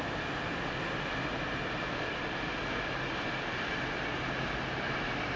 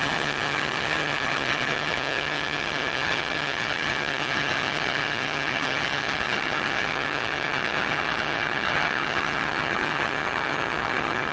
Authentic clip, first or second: first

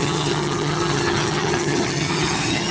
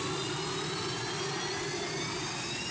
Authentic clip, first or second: second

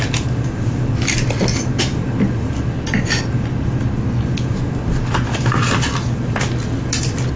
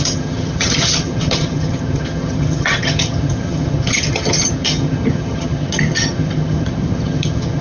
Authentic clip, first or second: first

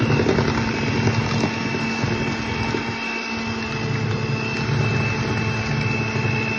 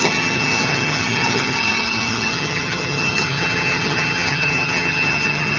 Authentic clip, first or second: first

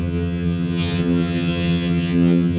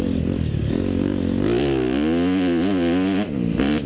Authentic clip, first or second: second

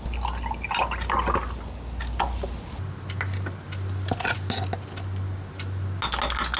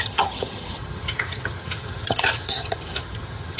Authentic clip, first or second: first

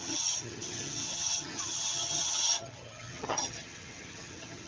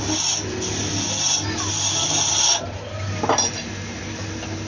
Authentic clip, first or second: second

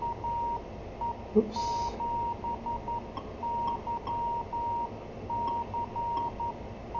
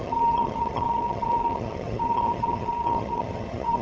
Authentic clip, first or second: first